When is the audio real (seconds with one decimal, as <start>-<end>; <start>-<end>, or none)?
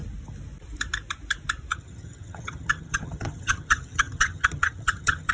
0.0-1.7